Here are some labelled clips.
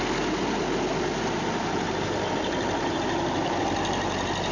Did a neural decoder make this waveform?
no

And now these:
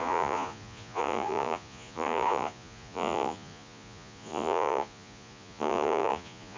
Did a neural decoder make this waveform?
yes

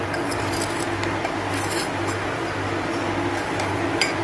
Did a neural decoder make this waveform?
no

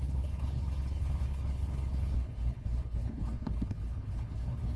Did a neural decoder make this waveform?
yes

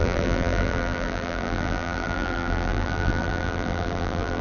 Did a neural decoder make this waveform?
yes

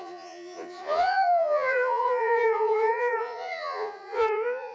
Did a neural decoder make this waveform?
yes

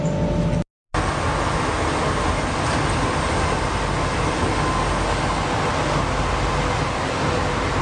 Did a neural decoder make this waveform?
no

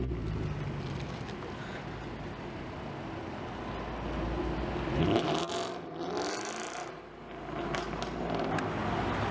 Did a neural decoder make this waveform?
no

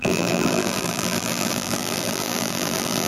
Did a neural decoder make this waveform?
yes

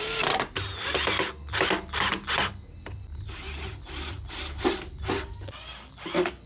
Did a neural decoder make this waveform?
no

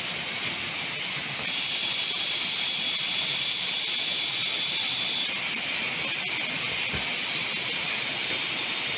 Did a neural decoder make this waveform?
no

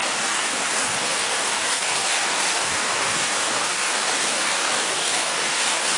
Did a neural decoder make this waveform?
yes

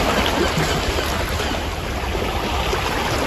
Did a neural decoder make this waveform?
no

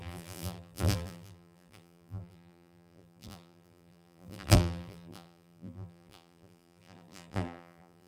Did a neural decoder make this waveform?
yes